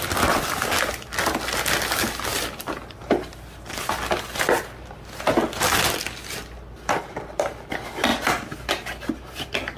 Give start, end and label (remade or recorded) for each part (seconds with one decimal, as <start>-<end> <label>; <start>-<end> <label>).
0.0-9.8 recorded